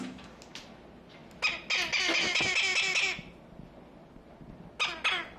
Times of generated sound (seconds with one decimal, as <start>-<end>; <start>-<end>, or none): none